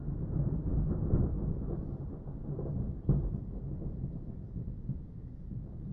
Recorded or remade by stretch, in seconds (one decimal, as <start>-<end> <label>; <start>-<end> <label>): 0.0-5.9 recorded